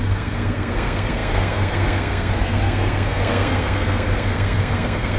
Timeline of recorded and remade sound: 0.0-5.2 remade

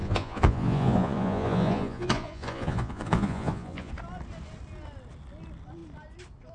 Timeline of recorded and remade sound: 0.0-3.9 remade; 3.9-6.5 recorded

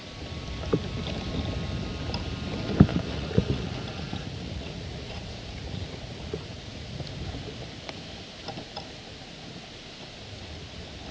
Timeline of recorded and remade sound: 0.0-2.9 recorded; 2.9-7.0 remade; 7.0-9.1 recorded; 9.1-9.6 remade; 9.6-11.1 recorded